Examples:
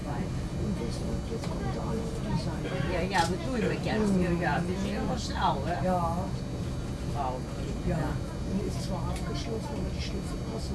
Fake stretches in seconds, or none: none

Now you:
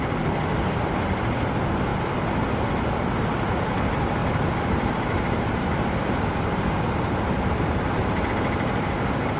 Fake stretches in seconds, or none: 4.2-8.3 (vocoder, BigVGAN v2)